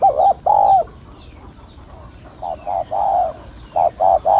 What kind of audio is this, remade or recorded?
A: recorded